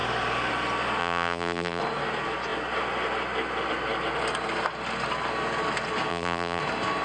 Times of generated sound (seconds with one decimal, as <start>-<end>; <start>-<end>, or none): 1.0-1.8; 6.1-6.6